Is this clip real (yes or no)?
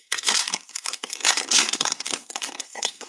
no